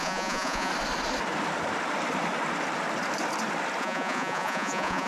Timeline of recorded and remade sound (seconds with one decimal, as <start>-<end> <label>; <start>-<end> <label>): 0.0-0.7 remade; 0.7-3.8 recorded; 3.8-5.1 remade